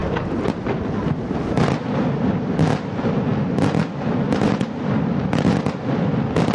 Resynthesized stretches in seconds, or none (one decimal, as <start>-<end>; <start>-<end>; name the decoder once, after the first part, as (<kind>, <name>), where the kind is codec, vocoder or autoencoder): none